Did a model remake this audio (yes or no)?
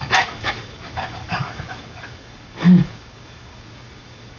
yes